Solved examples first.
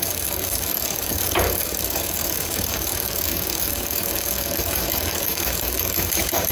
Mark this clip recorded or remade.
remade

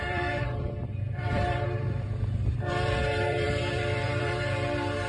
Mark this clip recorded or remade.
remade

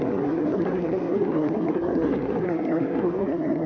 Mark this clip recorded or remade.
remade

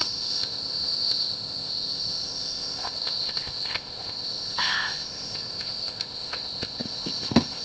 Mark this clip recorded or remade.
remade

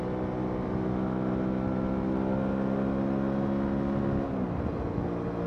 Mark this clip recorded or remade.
recorded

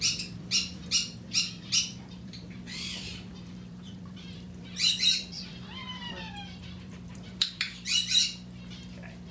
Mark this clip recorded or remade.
remade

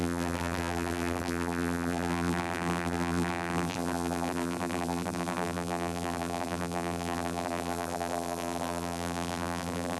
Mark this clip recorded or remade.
remade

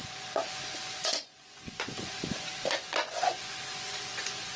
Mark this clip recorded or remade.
remade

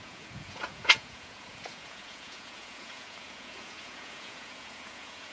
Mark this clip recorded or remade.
remade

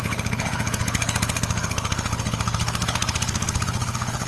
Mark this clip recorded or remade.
remade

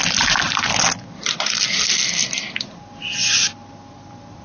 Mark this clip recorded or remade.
recorded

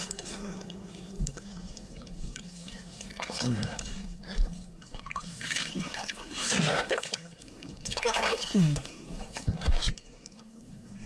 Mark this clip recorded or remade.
remade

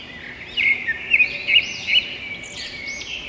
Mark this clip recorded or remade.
recorded